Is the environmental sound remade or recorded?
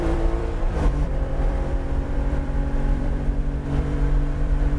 remade